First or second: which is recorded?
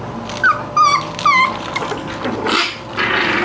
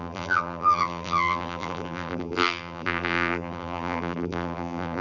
first